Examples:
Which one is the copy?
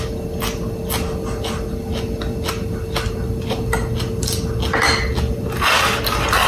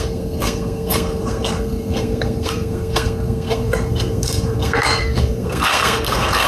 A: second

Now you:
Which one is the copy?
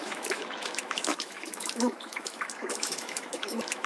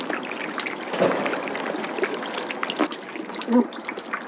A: first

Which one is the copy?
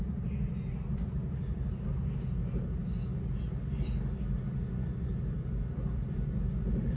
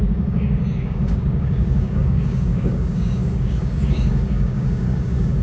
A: second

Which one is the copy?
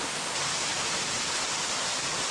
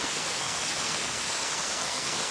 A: second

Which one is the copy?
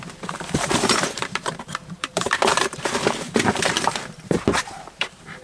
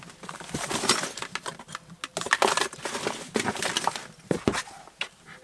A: first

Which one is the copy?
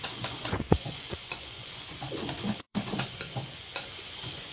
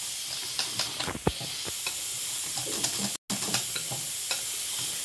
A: first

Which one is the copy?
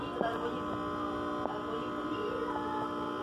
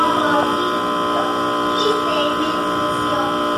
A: second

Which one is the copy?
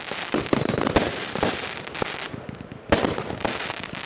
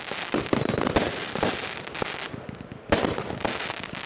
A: first